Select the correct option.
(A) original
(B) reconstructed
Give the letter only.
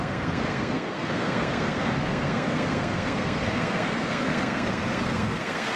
B